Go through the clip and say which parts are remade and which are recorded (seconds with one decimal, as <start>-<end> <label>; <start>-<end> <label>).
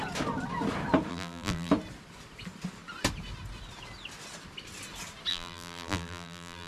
0.0-1.1 recorded; 1.1-1.7 remade; 1.7-5.3 recorded; 5.3-6.7 remade